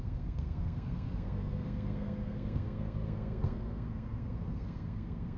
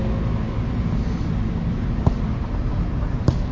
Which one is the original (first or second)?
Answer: second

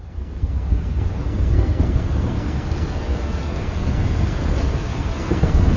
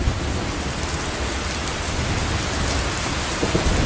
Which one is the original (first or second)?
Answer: second